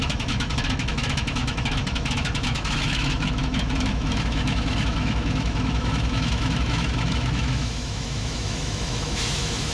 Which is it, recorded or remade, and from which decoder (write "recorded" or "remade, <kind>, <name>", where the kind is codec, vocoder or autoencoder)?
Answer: remade, autoencoder, DAC-VAE